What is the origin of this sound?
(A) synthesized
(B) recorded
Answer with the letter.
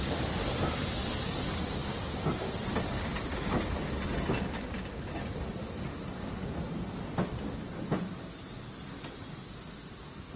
B